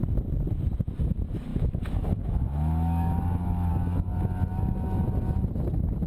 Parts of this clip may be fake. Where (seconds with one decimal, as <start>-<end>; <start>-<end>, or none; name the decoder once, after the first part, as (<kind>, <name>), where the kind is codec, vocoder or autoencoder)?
1.5-3.7 (autoencoder, DAC-VAE)